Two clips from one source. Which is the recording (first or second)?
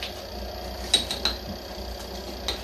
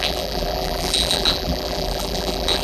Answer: first